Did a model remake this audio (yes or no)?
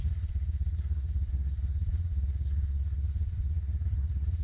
yes